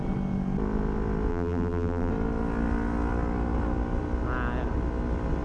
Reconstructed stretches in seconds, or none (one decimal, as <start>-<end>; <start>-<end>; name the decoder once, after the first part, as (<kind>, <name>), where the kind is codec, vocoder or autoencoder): 1.3-2.1 (vocoder, BigVGAN v2)